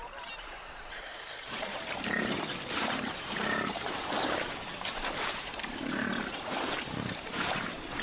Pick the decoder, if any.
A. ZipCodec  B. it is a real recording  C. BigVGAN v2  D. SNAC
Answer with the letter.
C